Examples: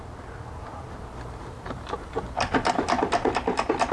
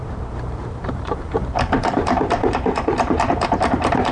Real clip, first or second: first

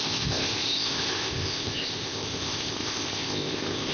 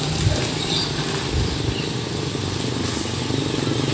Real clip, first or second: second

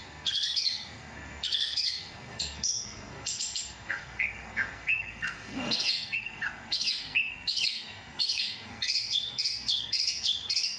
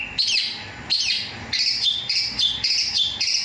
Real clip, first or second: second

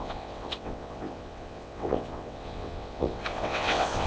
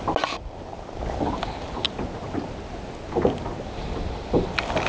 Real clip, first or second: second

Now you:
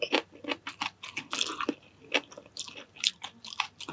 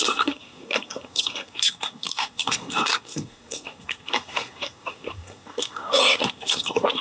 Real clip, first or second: first